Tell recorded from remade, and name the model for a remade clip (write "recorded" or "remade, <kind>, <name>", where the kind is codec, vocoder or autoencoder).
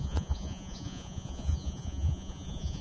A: remade, vocoder, Vocos